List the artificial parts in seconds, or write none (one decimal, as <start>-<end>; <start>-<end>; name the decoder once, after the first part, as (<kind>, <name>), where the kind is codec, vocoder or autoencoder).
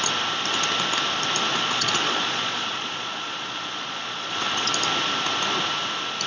1.5-4.7 (vocoder, Vocos)